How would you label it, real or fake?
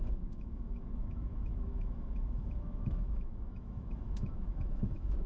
fake